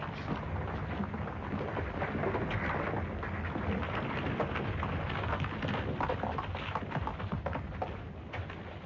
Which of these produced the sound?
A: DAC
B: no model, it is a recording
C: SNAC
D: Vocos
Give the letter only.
B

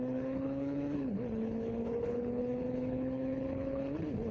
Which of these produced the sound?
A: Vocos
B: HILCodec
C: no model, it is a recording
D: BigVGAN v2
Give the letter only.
B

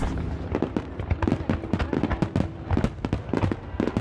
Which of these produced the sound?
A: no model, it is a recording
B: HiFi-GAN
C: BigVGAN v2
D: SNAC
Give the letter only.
A